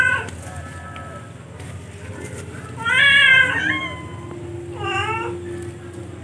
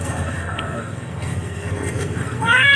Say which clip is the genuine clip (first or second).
first